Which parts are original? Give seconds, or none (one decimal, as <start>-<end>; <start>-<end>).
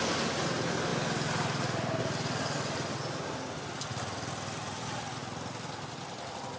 0.0-6.6